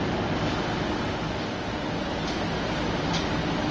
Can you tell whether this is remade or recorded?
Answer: recorded